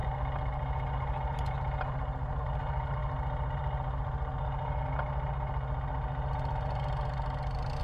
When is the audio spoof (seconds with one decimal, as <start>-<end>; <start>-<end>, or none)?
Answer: none